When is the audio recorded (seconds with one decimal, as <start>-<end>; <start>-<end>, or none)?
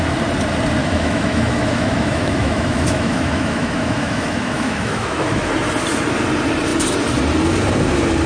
0.0-0.8; 5.5-8.3